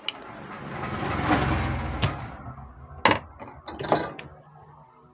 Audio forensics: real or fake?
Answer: real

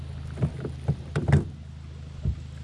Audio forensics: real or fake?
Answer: real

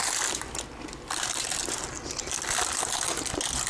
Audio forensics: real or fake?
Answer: real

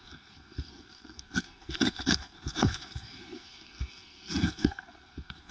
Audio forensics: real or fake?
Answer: fake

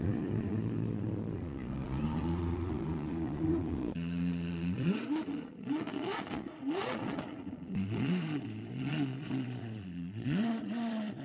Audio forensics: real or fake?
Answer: fake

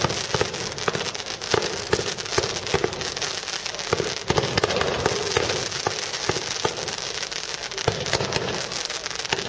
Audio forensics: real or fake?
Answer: real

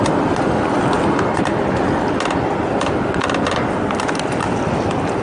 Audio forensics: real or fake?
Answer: real